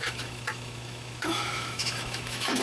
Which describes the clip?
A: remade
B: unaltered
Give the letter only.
A